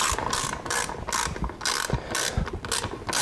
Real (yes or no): yes